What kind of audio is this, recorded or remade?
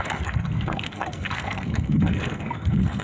remade